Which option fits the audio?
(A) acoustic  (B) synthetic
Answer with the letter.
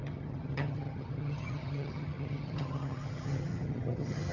B